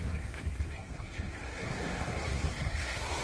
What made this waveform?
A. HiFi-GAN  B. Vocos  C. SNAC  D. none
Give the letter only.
C